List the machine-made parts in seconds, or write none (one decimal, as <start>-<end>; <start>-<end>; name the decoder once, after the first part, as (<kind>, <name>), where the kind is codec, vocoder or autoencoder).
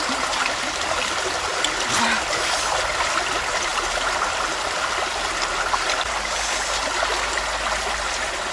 none